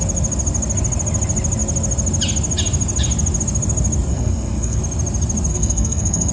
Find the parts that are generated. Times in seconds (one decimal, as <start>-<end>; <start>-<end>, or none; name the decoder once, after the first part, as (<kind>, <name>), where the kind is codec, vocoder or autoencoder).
4.1-4.8 (codec, SNAC); 5.5-6.3